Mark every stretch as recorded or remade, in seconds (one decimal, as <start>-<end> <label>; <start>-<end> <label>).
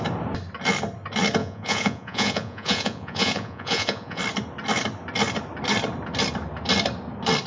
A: 0.0-1.4 recorded; 1.4-4.2 remade; 4.2-7.5 recorded